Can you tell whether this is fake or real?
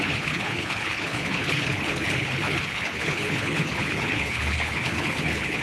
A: fake